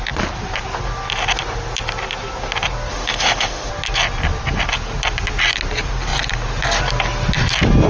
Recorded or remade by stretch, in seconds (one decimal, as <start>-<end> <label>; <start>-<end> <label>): 0.0-2.9 recorded; 2.9-3.7 remade; 3.7-7.9 recorded

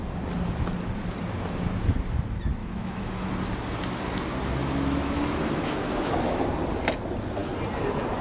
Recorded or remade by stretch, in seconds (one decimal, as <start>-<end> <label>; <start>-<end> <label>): 0.0-2.6 recorded; 2.6-3.3 remade; 3.3-4.6 recorded; 4.6-6.4 remade; 6.4-8.2 recorded